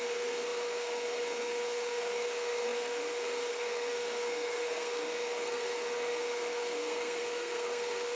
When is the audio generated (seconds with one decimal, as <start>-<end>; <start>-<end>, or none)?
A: 0.0-8.2